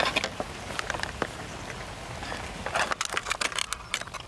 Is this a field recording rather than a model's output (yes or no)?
yes